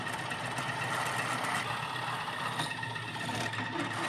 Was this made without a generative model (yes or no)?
yes